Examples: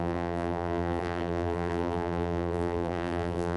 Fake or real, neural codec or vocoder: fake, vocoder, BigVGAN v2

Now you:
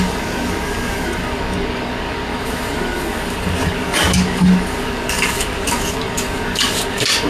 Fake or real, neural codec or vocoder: fake, codec, DAC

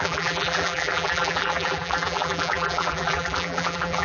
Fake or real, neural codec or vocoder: fake, vocoder, BigVGAN v2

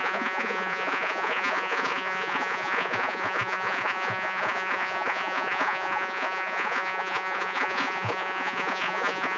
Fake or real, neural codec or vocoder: fake, vocoder, Vocos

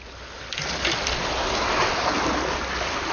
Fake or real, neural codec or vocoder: real